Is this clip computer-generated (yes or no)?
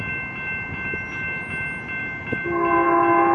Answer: no